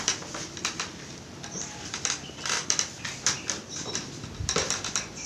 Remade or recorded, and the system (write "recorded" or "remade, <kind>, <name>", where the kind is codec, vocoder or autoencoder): remade, vocoder, BigVGAN v2